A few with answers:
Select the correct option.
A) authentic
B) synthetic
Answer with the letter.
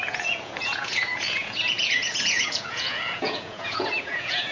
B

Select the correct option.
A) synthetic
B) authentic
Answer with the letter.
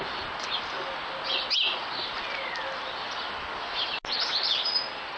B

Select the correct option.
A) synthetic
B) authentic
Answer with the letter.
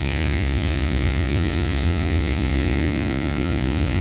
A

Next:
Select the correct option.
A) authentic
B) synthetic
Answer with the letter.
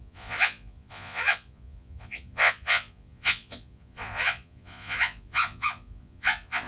B